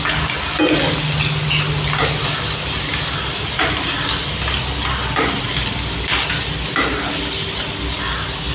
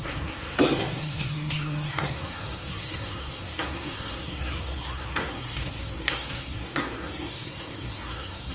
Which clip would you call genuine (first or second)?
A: first